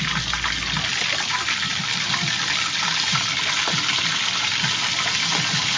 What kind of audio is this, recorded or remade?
recorded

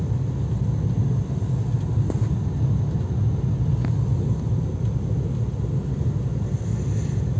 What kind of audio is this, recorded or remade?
recorded